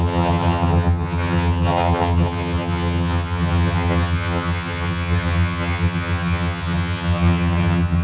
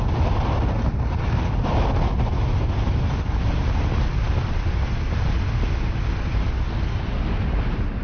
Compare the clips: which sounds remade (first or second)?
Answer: first